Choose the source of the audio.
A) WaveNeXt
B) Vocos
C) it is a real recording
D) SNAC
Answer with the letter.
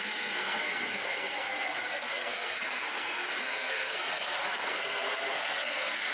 D